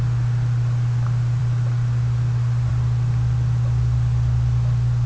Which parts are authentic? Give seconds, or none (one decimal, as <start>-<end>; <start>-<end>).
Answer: 0.0-5.1